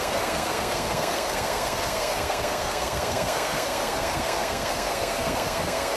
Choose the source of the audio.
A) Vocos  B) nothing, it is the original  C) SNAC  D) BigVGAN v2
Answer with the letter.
C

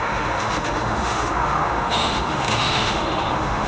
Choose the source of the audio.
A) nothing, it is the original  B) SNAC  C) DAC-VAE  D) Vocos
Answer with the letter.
C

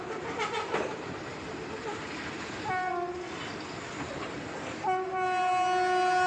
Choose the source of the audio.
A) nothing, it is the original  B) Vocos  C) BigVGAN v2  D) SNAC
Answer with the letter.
A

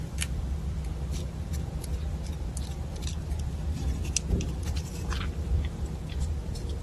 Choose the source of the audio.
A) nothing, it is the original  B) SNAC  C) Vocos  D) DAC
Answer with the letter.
A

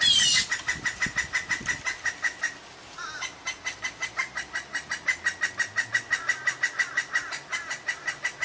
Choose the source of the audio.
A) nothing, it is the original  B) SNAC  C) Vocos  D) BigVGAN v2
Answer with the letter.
A